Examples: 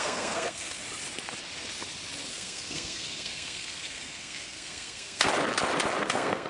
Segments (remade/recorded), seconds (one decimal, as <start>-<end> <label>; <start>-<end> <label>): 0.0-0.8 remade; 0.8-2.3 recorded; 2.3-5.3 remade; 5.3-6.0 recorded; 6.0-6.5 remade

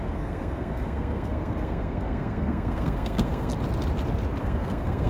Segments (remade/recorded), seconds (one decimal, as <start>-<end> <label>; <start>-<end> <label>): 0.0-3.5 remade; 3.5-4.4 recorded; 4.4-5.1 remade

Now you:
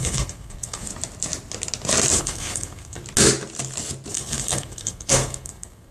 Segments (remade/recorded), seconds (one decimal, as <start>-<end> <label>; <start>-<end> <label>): 0.0-0.9 remade; 0.9-2.2 recorded; 2.2-3.0 remade; 3.0-4.1 recorded; 4.1-5.9 remade

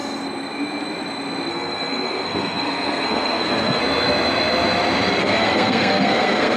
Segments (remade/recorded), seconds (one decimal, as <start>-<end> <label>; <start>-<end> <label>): 0.0-1.5 recorded; 1.5-3.8 remade; 3.8-5.2 recorded; 5.2-6.6 remade

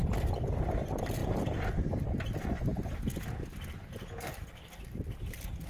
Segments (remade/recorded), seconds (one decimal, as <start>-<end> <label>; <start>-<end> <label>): 0.0-5.7 recorded

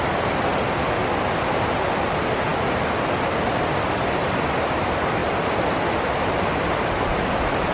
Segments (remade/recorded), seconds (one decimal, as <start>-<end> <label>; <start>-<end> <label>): 0.0-7.7 recorded

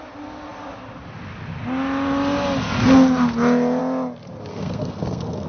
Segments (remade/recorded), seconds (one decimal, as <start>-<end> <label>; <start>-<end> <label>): 0.0-4.5 recorded; 4.5-5.5 remade